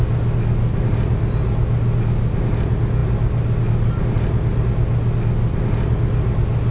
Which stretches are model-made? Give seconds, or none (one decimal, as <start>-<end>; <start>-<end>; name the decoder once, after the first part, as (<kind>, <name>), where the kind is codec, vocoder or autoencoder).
none